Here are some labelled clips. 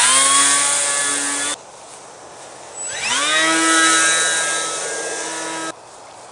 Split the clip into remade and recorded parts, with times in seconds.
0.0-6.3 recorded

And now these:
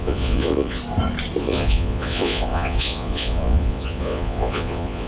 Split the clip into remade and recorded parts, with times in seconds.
0.0-0.8 remade; 0.8-1.4 recorded; 1.4-5.1 remade